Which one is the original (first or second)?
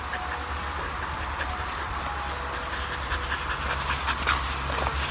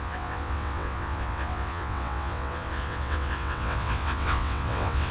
first